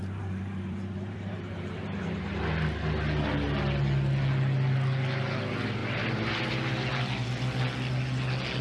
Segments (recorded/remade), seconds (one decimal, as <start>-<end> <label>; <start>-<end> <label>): 0.0-2.4 remade; 2.4-5.8 recorded; 5.8-6.5 remade; 6.5-8.6 recorded